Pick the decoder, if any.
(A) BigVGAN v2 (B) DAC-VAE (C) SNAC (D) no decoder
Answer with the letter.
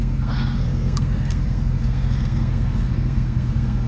C